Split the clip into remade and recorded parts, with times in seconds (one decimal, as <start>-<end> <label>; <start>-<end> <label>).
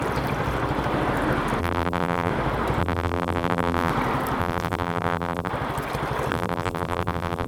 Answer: 0.0-1.6 recorded; 1.6-2.3 remade; 2.3-2.8 recorded; 2.8-3.9 remade; 3.9-4.4 recorded; 4.4-5.5 remade; 5.5-6.3 recorded; 6.3-7.5 remade